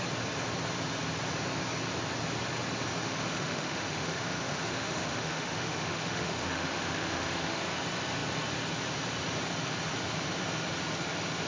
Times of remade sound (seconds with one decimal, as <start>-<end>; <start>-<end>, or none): 3.0-7.6